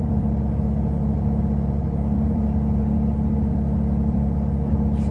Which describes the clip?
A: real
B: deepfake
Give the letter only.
B